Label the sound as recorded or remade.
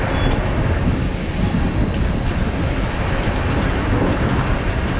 recorded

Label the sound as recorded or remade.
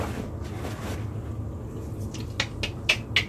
recorded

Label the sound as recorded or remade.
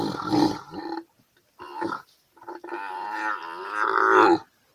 recorded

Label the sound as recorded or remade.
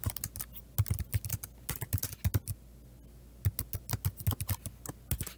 recorded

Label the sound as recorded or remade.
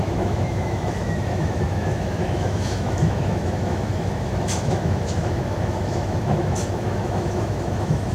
remade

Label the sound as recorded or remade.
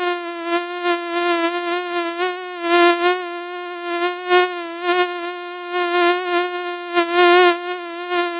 recorded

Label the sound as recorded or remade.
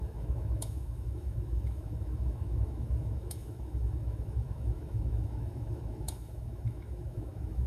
remade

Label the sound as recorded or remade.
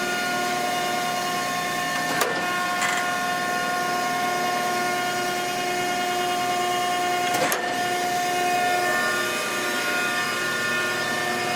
recorded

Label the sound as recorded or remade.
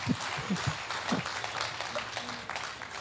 recorded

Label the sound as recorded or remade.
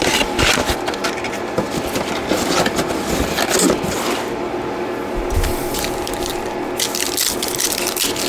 recorded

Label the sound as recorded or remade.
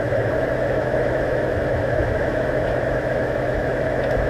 remade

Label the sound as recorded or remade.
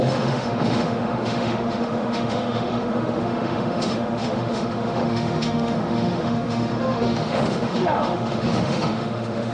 remade